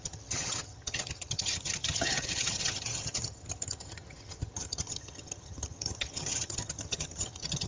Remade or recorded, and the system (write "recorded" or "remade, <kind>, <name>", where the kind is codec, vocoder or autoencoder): remade, vocoder, HiFi-GAN